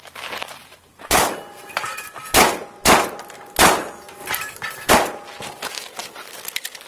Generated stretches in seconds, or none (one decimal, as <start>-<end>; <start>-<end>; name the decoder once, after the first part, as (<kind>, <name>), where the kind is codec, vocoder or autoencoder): 0.6-2.1 (vocoder, BigVGAN v2)